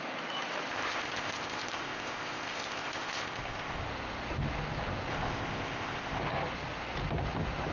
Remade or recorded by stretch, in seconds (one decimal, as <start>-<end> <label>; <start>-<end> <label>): 0.0-0.7 recorded; 0.7-3.8 remade; 3.8-5.1 recorded; 5.1-6.2 remade; 6.2-7.7 recorded